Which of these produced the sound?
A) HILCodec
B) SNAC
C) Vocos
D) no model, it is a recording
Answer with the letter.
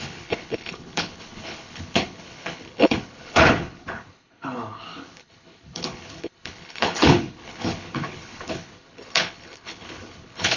A